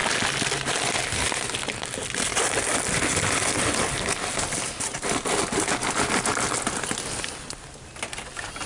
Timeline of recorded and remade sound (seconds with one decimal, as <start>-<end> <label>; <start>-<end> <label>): 0.0-8.7 recorded